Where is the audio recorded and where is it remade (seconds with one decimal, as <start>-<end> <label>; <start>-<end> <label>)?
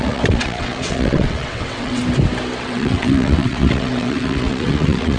0.0-2.0 remade; 2.0-2.6 recorded; 2.6-5.2 remade